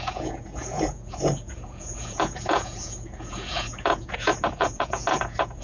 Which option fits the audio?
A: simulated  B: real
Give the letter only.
A